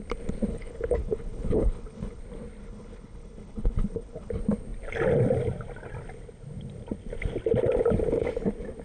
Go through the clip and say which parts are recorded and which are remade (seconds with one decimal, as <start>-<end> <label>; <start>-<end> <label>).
0.0-0.5 recorded; 0.5-2.2 remade; 2.2-2.6 recorded; 2.6-4.3 remade; 4.3-8.8 recorded